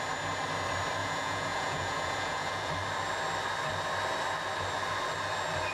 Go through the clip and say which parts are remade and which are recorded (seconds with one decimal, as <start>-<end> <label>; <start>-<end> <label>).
0.0-1.0 recorded; 1.0-2.7 remade; 2.7-5.7 recorded